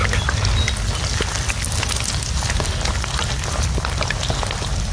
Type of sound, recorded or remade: recorded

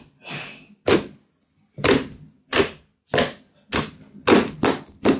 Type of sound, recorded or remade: recorded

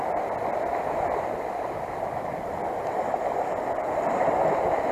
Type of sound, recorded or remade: recorded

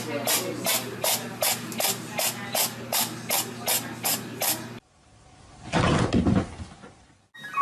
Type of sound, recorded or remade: recorded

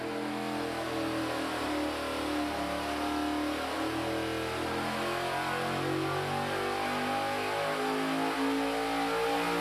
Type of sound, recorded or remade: recorded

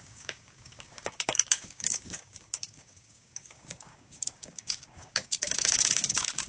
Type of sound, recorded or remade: remade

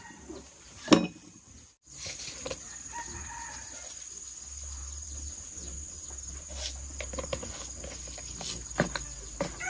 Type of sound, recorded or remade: recorded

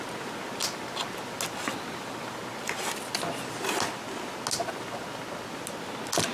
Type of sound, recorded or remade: recorded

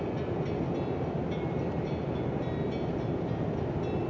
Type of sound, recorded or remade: recorded